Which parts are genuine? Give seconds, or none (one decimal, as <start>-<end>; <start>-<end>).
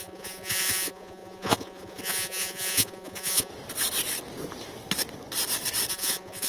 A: 3.5-5.9